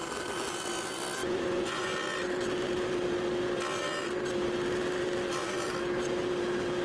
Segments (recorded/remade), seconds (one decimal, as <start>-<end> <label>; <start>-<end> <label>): 0.0-1.2 recorded; 1.2-1.9 remade; 1.9-6.8 recorded